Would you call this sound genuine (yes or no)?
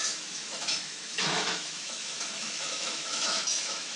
no